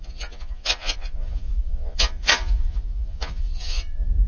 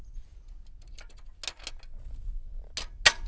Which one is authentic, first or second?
second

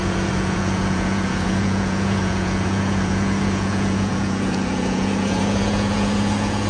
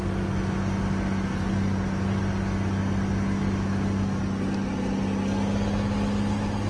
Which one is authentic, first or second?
second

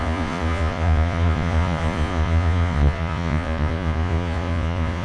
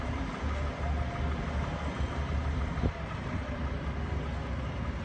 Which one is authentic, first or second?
second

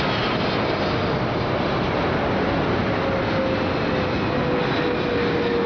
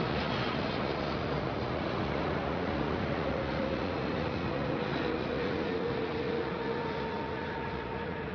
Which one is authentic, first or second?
first